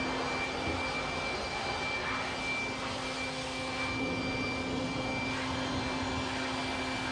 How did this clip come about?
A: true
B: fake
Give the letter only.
A